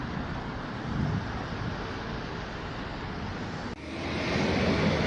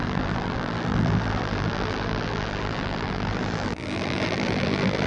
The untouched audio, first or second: first